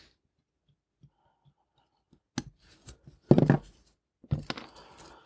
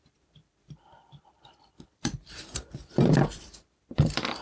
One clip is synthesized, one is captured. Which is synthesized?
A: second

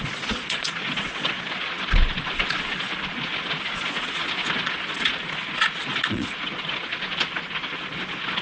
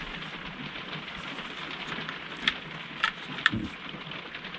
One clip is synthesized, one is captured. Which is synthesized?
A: first